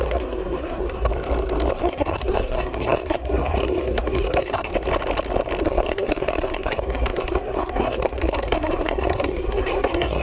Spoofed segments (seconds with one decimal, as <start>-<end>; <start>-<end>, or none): 0.0-1.1; 1.7-4.7; 5.6-10.2

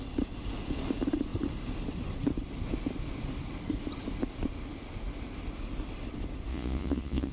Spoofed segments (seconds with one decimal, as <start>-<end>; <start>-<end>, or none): 6.5-7.3

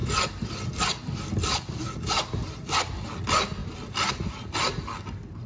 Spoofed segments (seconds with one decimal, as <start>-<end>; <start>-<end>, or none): none